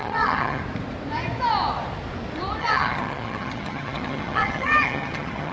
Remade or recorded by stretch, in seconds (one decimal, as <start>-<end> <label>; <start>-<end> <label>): 0.0-0.6 remade; 0.6-2.6 recorded; 2.6-5.5 remade